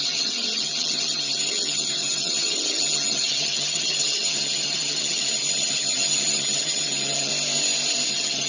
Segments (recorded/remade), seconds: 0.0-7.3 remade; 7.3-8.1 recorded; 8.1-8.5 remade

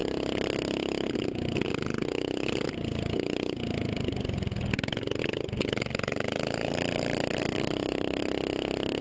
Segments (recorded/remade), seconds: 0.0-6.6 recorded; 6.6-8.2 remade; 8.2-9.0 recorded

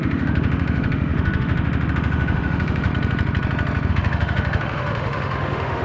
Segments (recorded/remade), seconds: 0.0-2.9 remade; 2.9-3.9 recorded; 3.9-5.8 remade

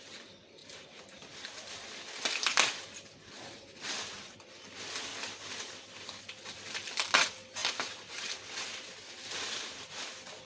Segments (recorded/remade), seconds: 0.0-10.5 recorded

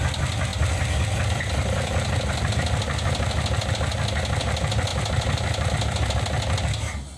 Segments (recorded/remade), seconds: 0.0-7.2 recorded

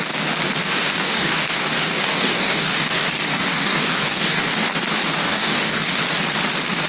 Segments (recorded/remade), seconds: 0.0-0.6 recorded; 0.6-4.7 remade; 4.7-5.2 recorded; 5.2-6.0 remade; 6.0-6.9 recorded

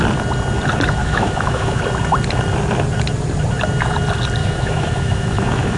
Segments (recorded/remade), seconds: 0.0-1.0 recorded; 1.0-1.8 remade; 1.8-4.4 recorded; 4.4-5.8 remade

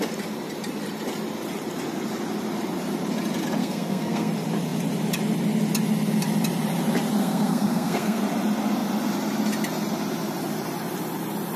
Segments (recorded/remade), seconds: 0.0-3.6 recorded; 3.6-4.3 remade; 4.3-7.2 recorded; 7.2-8.2 remade; 8.2-11.6 recorded